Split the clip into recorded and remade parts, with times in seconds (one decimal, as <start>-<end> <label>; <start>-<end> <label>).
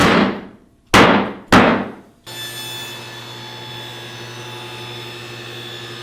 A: 0.0-0.7 remade; 0.7-6.0 recorded